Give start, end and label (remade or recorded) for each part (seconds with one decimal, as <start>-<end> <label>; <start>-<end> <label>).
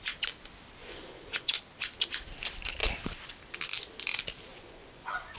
0.0-0.8 recorded; 0.8-1.6 remade; 1.6-4.5 recorded; 4.5-5.4 remade